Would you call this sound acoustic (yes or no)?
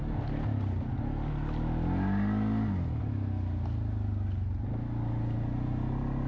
yes